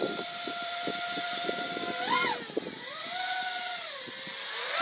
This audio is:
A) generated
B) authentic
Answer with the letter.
B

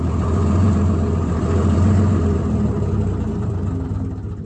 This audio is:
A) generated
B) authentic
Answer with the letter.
A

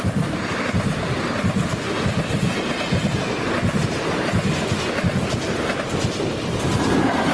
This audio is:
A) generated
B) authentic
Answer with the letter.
B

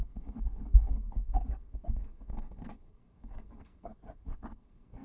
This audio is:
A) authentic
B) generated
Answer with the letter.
B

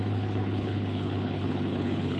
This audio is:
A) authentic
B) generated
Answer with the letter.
B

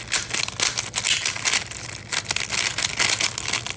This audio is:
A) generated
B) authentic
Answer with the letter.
B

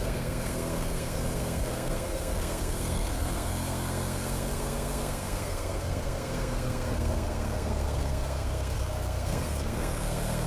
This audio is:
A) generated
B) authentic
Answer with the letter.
A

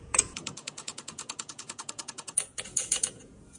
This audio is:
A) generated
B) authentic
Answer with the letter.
A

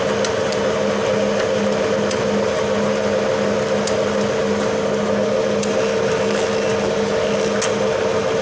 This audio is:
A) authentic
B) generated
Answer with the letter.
A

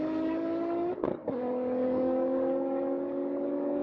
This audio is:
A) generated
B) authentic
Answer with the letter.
A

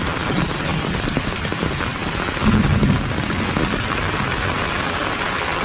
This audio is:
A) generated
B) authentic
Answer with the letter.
B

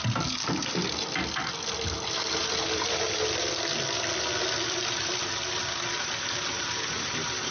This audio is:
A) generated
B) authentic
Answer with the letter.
B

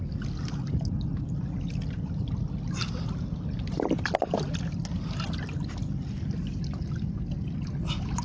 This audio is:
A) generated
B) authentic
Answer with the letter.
B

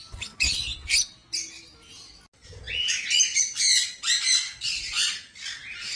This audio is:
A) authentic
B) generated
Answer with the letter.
A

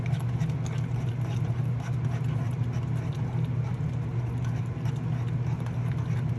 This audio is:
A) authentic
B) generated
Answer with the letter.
A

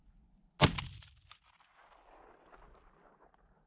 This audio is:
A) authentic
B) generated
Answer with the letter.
A